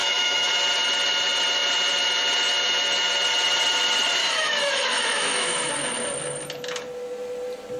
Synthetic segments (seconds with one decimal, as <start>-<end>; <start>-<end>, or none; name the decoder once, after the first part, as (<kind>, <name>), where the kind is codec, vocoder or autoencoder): 0.0-0.5 (autoencoder, DAC-VAE); 4.2-5.7